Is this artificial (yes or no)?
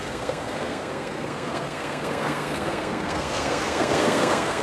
yes